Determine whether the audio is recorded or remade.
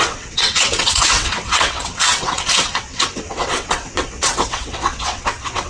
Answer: remade